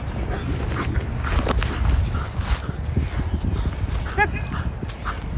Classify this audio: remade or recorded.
recorded